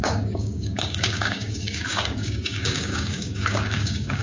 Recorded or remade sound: remade